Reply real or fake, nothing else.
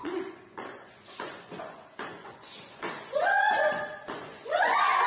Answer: fake